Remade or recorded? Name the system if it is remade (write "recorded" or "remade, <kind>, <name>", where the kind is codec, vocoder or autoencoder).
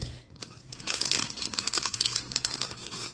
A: remade, codec, SNAC